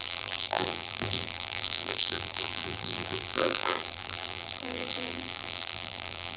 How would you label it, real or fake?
fake